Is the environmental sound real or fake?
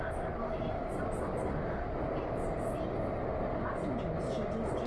real